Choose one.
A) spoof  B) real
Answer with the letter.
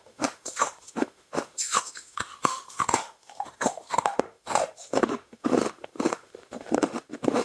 A